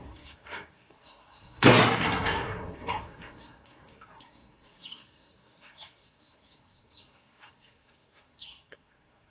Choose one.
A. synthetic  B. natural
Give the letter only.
A